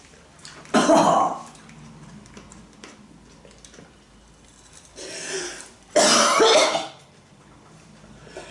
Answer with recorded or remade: recorded